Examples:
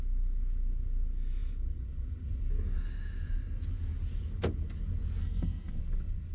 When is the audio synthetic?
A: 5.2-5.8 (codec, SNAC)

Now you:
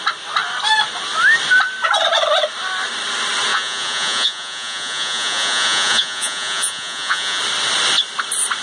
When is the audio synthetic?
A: 3.5-7.4 (vocoder, Vocos)

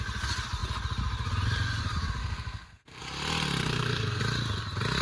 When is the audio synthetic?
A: 2.2-3.0 (codec, SNAC); 3.6-4.2

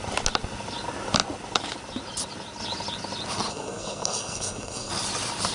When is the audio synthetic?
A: 3.5-4.9 (codec, SNAC)